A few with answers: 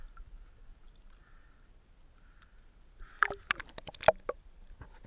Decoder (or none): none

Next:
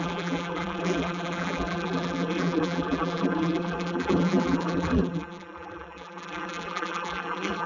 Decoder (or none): vocoder, BigVGAN v2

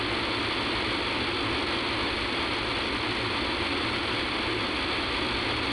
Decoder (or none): none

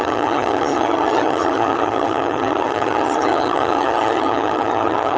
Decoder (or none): vocoder, HiFi-GAN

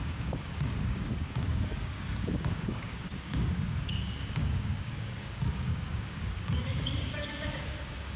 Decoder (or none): codec, DAC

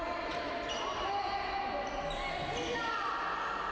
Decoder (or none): none